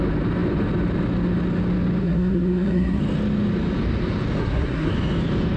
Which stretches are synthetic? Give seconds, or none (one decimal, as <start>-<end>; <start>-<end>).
2.0-3.0; 4.4-4.9